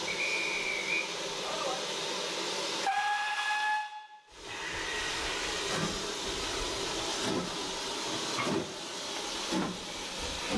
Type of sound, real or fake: real